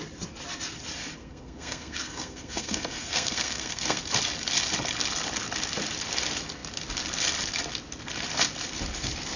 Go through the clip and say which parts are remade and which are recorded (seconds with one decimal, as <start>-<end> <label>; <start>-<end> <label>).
0.0-1.2 recorded; 1.2-4.0 remade; 4.0-9.4 recorded